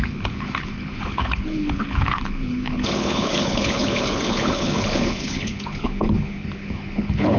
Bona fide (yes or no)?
no